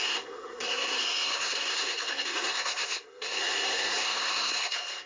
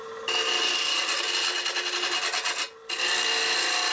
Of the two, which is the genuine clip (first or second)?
second